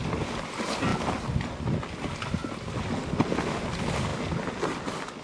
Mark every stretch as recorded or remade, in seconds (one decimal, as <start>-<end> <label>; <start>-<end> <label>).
0.0-5.2 recorded